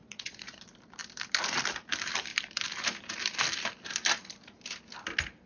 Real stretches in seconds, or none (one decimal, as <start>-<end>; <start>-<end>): 0.6-5.5